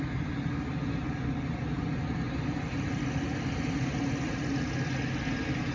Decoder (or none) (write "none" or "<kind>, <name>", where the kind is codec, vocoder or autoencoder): none